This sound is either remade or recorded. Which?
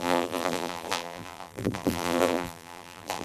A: remade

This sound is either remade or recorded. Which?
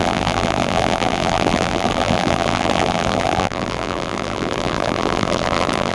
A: remade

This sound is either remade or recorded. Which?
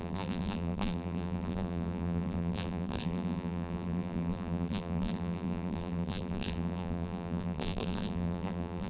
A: remade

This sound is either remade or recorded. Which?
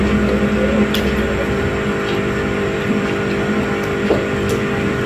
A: recorded